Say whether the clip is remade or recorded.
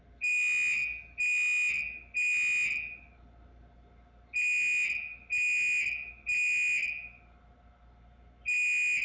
recorded